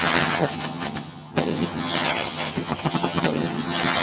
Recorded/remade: remade